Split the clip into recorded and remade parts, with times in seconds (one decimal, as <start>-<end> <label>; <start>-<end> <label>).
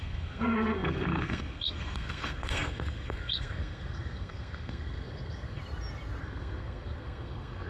0.0-5.6 remade; 5.6-6.2 recorded; 6.2-7.7 remade